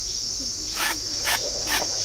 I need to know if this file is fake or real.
fake